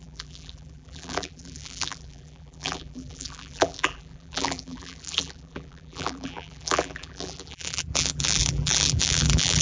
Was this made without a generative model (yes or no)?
no